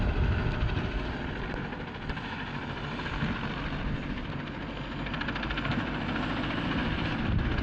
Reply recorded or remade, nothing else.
recorded